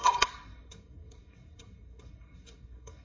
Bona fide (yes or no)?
no